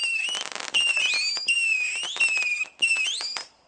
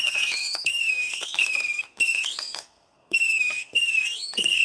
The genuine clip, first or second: first